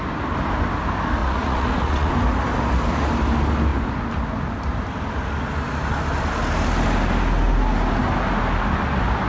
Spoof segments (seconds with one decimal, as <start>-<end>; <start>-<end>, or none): 1.2-2.1